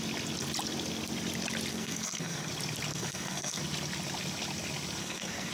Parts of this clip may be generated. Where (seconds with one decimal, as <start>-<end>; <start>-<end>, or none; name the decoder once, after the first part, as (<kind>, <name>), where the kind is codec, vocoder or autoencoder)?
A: 1.7-2.5 (codec, SNAC); 2.9-3.6; 5.0-5.5